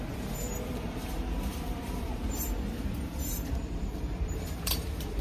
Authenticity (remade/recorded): remade